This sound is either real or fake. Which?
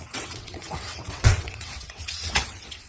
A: fake